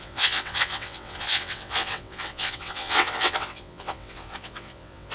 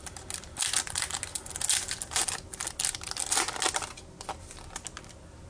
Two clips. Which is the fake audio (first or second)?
first